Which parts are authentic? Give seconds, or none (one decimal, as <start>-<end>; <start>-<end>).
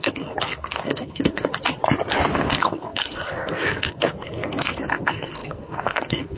1.5-2.3